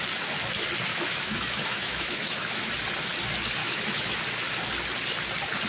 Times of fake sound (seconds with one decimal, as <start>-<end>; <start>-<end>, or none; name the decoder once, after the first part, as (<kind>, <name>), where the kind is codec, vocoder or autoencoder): 0.9-2.7 (autoencoder, DAC-VAE); 3.6-4.2